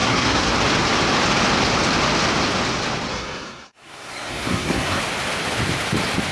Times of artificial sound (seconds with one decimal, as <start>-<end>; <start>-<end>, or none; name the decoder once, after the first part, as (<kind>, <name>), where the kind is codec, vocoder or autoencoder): 0.0-0.5 (codec, SNAC); 3.1-5.0